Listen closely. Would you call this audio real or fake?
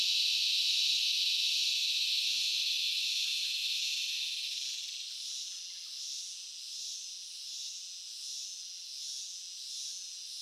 real